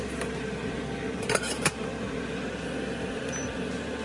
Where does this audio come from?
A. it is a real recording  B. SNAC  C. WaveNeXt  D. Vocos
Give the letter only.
A